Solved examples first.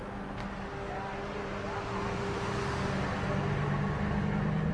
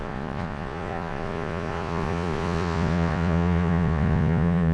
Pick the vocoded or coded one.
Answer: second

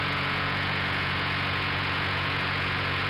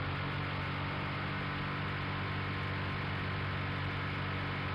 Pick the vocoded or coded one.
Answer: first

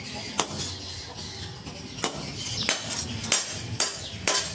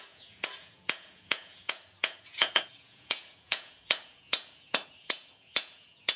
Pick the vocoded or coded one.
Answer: second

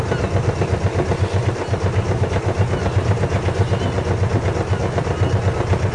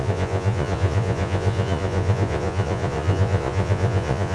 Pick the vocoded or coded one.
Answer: second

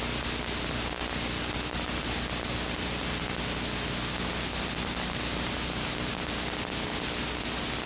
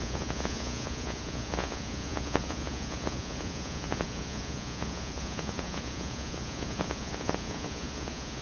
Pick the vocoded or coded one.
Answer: second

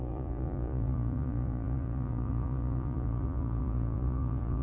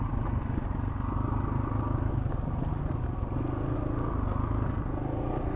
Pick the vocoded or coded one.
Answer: first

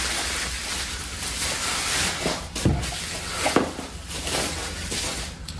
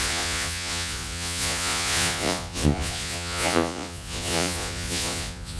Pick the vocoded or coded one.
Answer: second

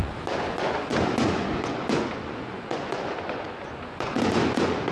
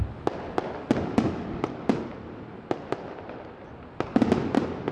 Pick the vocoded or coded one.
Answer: first